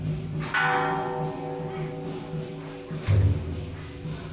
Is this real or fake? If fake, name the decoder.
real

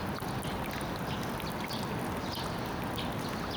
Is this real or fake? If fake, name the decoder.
real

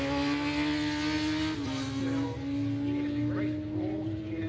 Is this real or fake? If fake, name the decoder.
real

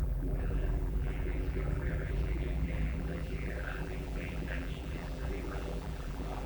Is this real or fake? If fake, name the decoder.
fake, vocoder, BigVGAN v2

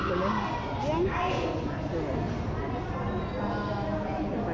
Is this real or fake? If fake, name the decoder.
real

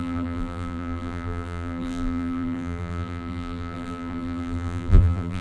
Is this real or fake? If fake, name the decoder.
fake, vocoder, BigVGAN v2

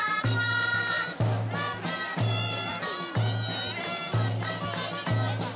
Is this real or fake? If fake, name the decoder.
real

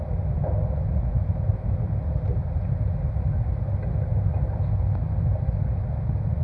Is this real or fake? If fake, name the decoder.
real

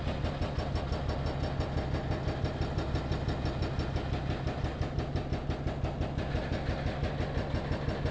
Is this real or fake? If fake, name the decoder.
real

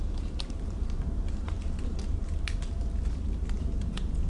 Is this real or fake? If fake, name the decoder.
fake, vocoder, BigVGAN v2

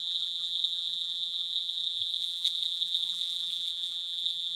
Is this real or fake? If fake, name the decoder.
fake, vocoder, BigVGAN v2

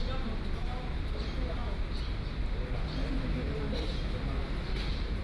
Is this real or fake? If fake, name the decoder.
real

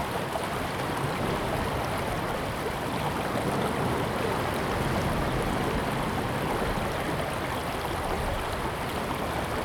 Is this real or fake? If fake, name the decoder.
real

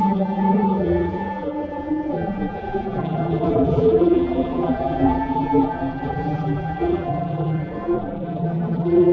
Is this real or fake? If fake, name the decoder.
fake, vocoder, BigVGAN v2